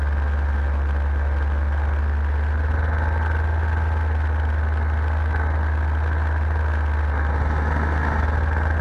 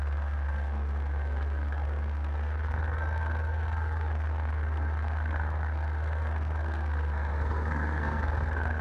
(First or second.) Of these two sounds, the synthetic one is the second